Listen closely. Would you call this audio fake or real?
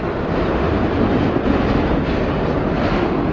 real